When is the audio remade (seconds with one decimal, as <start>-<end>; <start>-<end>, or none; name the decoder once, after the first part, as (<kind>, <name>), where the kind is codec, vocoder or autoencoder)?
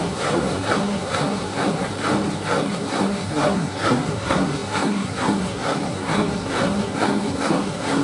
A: 0.0-1.9 (codec, SNAC); 2.5-8.0